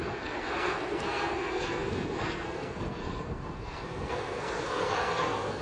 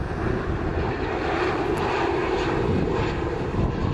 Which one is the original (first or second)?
second